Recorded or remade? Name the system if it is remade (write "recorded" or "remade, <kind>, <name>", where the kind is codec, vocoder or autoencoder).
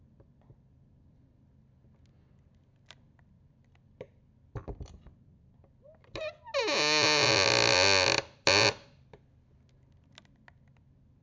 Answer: recorded